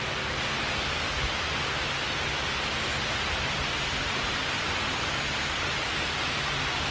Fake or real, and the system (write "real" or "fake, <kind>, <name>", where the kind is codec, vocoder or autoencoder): real